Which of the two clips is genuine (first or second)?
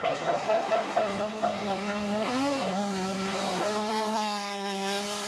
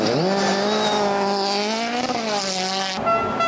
second